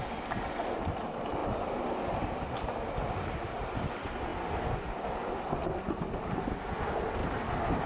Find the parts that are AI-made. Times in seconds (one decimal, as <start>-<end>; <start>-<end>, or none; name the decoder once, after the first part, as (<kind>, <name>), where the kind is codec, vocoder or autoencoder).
1.4-3.2 (vocoder, BigVGAN v2); 7.2-7.9

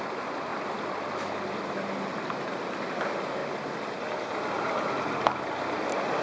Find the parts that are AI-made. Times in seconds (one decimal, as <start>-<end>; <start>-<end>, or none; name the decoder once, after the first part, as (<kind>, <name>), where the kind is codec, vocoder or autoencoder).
0.0-0.5 (vocoder, BigVGAN v2); 3.0-3.4; 5.0-6.2